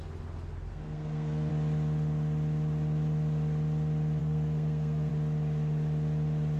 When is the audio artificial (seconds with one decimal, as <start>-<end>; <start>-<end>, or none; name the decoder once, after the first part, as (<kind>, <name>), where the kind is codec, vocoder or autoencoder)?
0.7-1.5 (codec, SNAC); 4.2-5.1